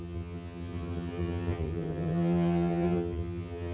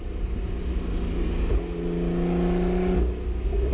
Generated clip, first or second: first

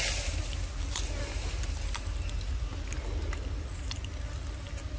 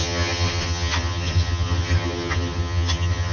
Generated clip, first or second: second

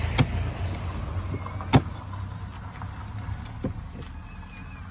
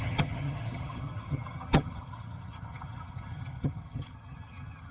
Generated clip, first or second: second